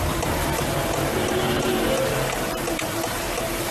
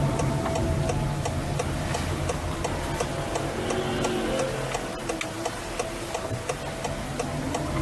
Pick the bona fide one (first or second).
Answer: second